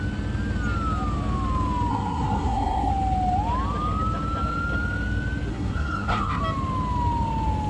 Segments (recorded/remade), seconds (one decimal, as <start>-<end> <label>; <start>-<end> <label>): 0.0-1.9 recorded; 1.9-2.9 remade; 2.9-5.5 recorded; 5.5-6.4 remade; 6.4-7.7 recorded